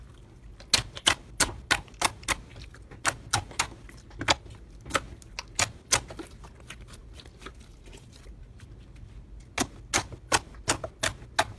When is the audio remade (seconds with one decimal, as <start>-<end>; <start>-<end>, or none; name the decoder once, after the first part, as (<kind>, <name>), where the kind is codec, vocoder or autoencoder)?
none